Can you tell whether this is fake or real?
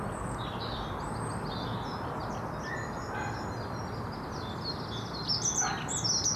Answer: real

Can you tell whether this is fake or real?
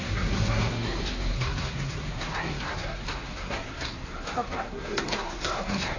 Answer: fake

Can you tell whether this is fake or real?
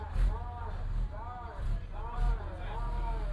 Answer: real